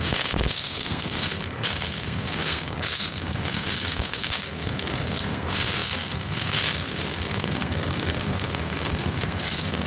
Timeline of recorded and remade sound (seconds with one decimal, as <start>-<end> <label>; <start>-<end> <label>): 0.0-9.9 remade